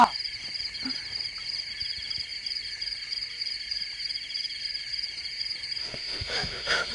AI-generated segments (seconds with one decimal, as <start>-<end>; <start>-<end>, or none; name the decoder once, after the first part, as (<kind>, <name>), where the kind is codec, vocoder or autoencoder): 5.8-6.9 (autoencoder, DAC-VAE)